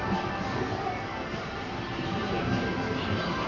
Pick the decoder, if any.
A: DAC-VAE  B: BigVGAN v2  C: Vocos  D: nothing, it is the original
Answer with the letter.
B